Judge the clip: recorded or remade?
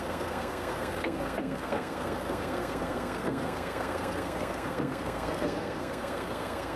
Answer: remade